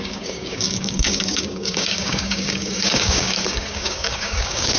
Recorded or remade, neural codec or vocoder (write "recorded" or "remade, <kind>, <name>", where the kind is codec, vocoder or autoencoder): remade, codec, DAC